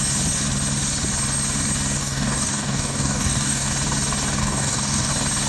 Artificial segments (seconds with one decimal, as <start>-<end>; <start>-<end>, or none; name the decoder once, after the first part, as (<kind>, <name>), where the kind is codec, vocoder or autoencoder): 2.0-3.7 (codec, DAC); 4.4-5.1